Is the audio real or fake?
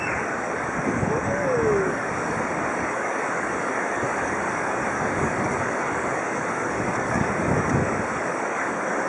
fake